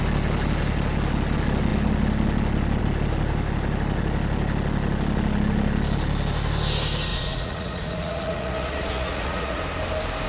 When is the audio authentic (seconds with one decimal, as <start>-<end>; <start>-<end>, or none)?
0.0-7.1; 9.6-10.3